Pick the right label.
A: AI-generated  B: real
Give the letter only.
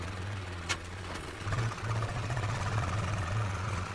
A